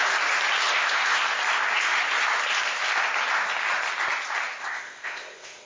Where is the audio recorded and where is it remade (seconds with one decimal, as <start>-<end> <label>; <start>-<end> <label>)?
0.0-0.7 recorded; 0.7-1.2 remade; 1.2-4.6 recorded; 4.6-5.7 remade